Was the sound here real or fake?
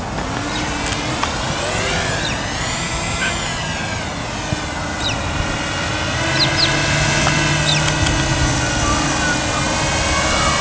real